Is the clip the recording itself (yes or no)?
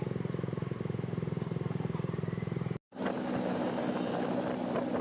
yes